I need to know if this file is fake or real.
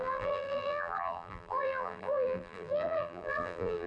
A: fake